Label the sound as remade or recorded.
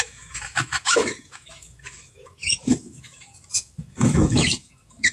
remade